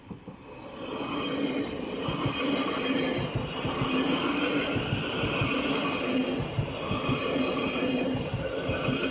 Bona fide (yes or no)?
yes